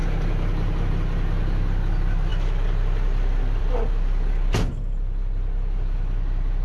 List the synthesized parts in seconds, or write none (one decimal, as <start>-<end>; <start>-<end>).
none